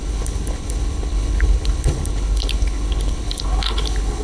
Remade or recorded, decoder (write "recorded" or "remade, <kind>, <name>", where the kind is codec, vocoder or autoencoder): remade, codec, HILCodec